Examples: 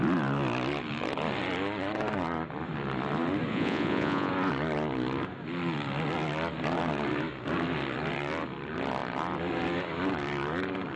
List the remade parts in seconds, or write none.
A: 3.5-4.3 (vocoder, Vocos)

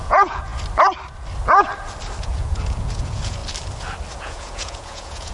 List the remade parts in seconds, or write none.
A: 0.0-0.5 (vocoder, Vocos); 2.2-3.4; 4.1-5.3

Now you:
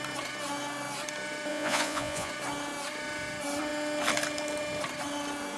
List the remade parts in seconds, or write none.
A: 1.5-2.3 (vocoder, Vocos)

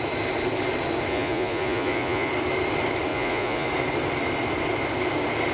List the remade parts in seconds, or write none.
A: 1.1-2.3 (vocoder, Vocos); 3.1-3.7

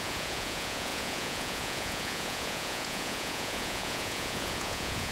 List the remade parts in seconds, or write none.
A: 0.0-5.1 (vocoder, Vocos)